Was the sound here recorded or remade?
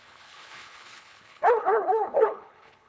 remade